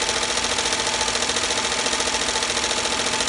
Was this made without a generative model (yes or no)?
yes